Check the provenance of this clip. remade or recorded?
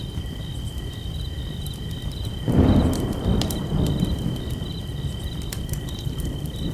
recorded